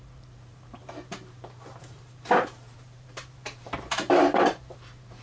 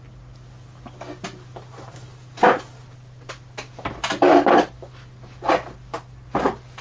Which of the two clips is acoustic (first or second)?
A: second